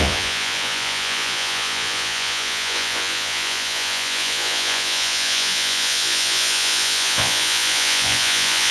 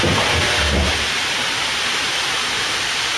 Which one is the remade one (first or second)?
first